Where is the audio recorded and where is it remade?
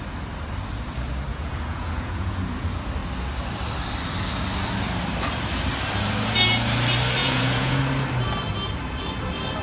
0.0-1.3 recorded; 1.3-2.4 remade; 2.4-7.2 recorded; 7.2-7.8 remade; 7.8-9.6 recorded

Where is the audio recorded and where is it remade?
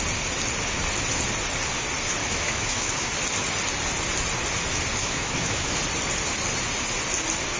0.0-2.2 recorded; 2.2-3.1 remade; 3.1-5.0 recorded; 5.0-5.8 remade; 5.8-7.6 recorded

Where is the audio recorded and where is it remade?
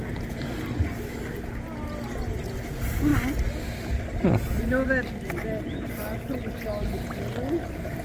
0.0-8.0 recorded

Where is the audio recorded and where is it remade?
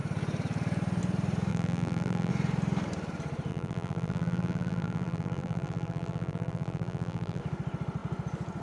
0.0-1.5 recorded; 1.5-2.3 remade; 2.3-3.5 recorded; 3.5-7.4 remade; 7.4-8.6 recorded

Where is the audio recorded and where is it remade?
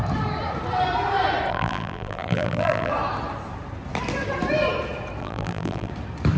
0.0-1.5 recorded; 1.5-2.9 remade; 2.9-5.2 recorded; 5.2-5.9 remade; 5.9-6.4 recorded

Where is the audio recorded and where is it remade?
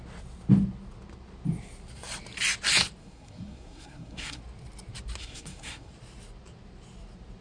0.0-3.0 recorded; 3.0-4.4 remade; 4.4-5.2 recorded; 5.2-5.9 remade; 5.9-7.4 recorded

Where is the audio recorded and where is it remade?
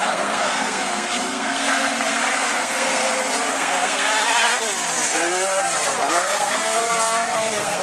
0.0-3.0 remade; 3.0-3.5 recorded; 3.5-4.1 remade; 4.1-6.1 recorded; 6.1-7.8 remade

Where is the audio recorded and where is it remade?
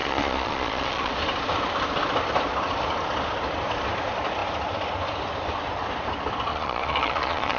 0.0-1.1 remade; 1.1-6.5 recorded; 6.5-7.6 remade